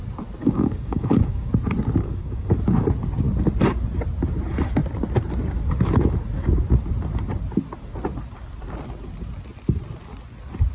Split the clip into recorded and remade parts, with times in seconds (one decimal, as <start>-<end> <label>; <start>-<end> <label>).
0.0-0.4 recorded; 0.4-1.5 remade; 1.5-2.0 recorded; 2.0-2.5 remade; 2.5-10.7 recorded